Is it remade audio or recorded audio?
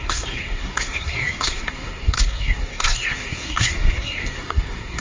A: remade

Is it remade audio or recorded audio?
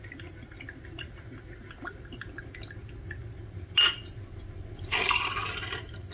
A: recorded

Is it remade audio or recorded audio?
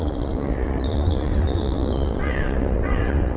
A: remade